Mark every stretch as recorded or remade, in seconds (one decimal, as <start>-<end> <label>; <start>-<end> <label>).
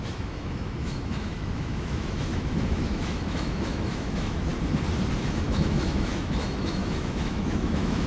0.0-4.5 remade; 4.5-5.2 recorded; 5.2-8.1 remade